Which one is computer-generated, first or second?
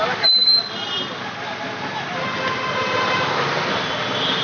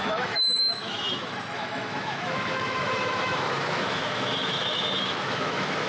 second